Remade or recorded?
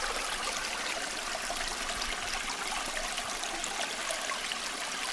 recorded